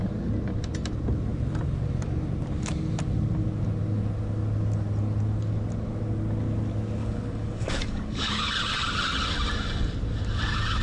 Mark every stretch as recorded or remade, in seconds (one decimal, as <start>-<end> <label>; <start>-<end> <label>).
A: 0.0-7.0 recorded; 7.0-8.3 remade; 8.3-10.8 recorded